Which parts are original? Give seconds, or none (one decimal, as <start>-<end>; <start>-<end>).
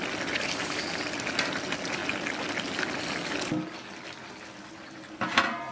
0.0-5.7